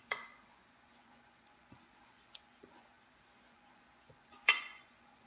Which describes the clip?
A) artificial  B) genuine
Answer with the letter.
A